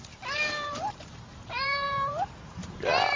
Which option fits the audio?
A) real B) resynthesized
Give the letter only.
B